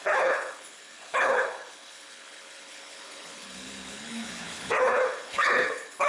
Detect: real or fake fake